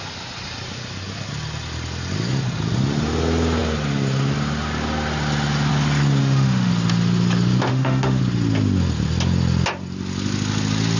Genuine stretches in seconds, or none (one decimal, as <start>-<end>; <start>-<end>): 0.0-6.2; 6.7-7.7; 8.2-11.0